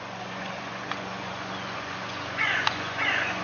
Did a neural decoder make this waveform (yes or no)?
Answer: yes